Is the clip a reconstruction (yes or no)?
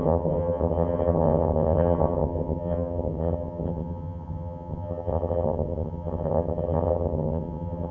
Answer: yes